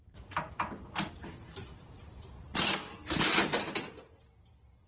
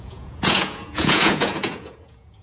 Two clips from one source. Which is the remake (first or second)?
second